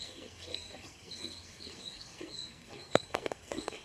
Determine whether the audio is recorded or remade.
remade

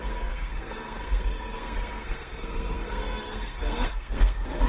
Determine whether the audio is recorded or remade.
remade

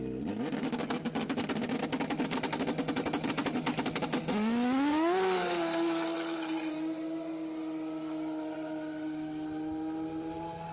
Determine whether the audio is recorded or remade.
recorded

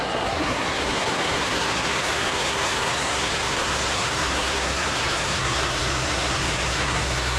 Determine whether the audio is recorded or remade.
remade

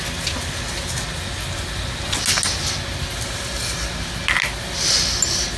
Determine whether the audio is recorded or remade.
recorded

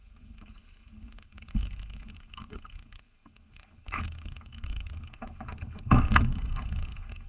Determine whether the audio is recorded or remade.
remade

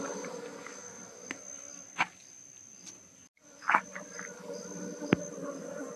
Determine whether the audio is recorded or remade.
recorded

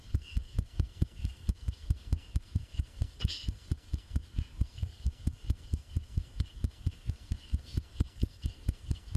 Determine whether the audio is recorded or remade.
remade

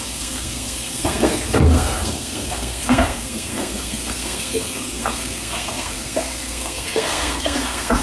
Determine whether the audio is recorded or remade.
remade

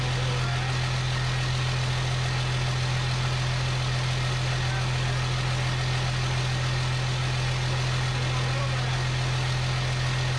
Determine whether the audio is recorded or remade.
recorded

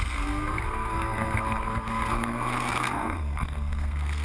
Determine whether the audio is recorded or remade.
remade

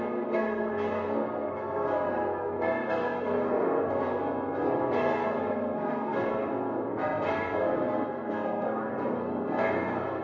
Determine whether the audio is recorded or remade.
remade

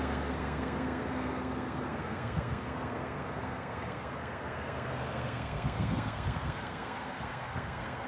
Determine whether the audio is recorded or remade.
remade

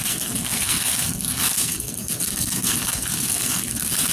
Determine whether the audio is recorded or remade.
remade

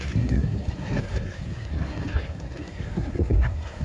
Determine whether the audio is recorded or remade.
remade